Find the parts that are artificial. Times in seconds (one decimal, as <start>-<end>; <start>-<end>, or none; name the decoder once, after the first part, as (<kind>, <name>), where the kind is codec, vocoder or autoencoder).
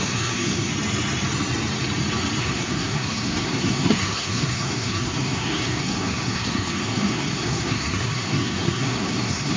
0.0-0.7 (codec, SNAC); 2.4-9.6